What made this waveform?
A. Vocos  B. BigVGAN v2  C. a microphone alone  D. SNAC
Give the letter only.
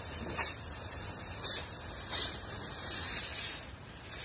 B